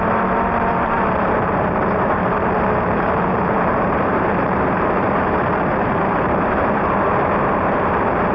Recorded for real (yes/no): no